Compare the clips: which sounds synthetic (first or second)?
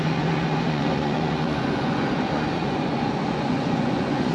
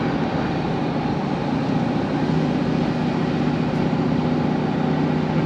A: first